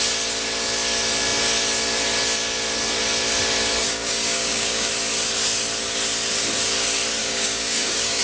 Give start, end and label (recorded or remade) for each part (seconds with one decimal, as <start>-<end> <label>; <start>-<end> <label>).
0.0-3.8 recorded; 3.8-4.9 remade; 4.9-7.2 recorded; 7.2-8.2 remade